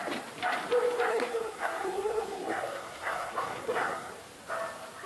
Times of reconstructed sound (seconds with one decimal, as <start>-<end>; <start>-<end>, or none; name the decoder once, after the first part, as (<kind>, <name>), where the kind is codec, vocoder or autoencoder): 1.1-4.1 (codec, SNAC)